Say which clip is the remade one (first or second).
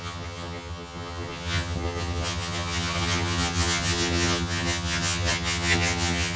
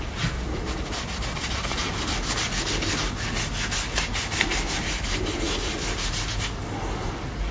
first